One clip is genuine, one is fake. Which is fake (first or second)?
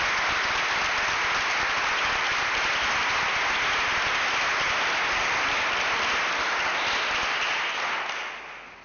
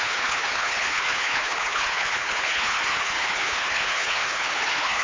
second